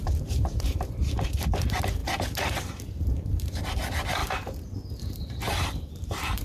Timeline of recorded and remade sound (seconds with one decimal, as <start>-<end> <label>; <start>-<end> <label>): 0.0-4.2 remade; 4.2-4.9 recorded; 4.9-6.4 remade

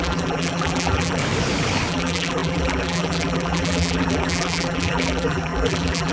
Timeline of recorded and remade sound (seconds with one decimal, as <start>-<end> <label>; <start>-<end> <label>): 0.0-1.2 remade; 1.2-1.9 recorded; 1.9-6.1 remade